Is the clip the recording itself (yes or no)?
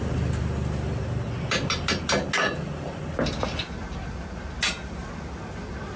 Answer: yes